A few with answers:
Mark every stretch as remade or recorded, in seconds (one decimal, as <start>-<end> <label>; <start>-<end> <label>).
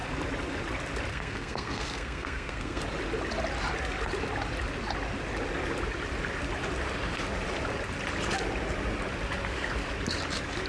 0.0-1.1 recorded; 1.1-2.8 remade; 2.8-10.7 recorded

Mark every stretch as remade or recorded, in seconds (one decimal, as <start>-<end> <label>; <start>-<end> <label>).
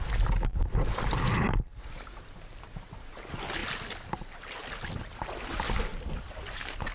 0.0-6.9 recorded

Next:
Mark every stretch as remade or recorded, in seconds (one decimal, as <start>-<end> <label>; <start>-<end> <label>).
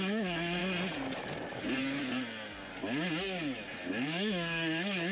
0.0-0.6 remade; 0.6-3.7 recorded; 3.7-5.1 remade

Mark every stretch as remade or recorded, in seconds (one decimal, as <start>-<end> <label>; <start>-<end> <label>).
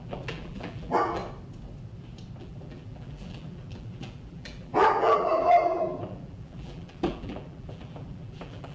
0.0-1.2 remade; 1.2-2.4 recorded; 2.4-8.7 remade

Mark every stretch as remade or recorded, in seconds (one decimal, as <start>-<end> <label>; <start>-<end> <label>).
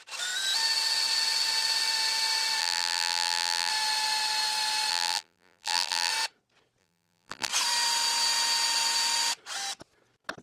0.0-2.6 recorded; 2.6-3.7 remade; 3.7-4.9 recorded; 4.9-6.1 remade; 6.1-6.8 recorded; 6.8-7.5 remade; 7.5-10.4 recorded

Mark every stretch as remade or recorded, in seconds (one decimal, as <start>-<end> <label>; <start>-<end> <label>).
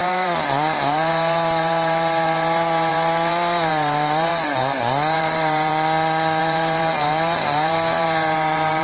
0.0-5.7 remade; 5.7-6.4 recorded; 6.4-8.8 remade